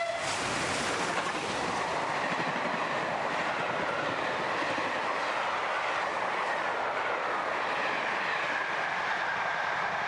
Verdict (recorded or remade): recorded